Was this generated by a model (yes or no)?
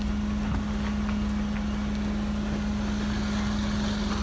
no